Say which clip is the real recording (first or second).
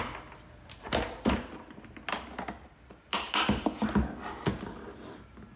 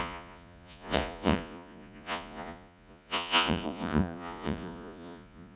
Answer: first